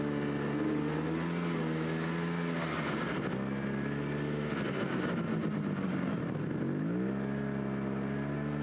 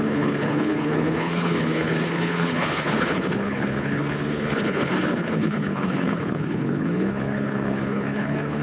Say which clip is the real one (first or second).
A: first